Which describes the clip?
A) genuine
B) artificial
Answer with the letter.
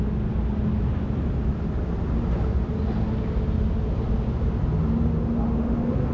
A